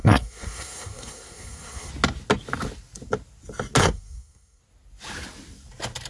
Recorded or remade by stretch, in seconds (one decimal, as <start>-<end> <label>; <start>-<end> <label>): 0.0-1.9 remade; 1.9-3.8 recorded; 3.8-4.6 remade; 4.6-6.1 recorded